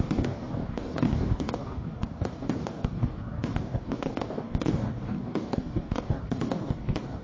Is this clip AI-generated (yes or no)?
yes